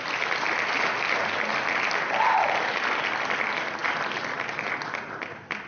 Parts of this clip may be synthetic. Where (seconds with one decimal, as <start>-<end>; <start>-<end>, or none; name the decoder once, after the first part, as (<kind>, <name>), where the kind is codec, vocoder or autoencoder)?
none